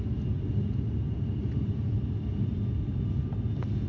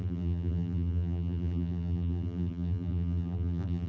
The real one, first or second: first